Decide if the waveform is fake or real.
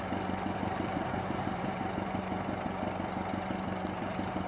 fake